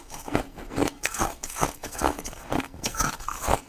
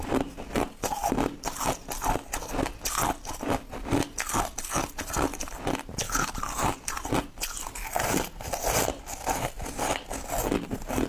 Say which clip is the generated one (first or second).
first